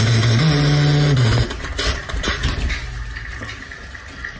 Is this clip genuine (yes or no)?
yes